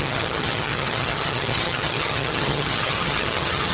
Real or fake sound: fake